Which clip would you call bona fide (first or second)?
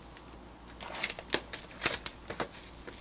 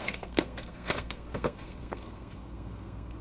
first